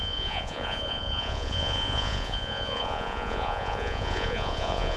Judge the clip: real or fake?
fake